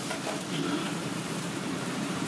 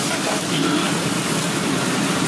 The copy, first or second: first